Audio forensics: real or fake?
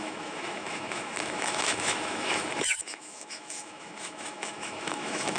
fake